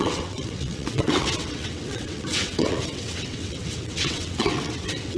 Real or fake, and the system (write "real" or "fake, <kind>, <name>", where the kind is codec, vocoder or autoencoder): fake, vocoder, WaveNeXt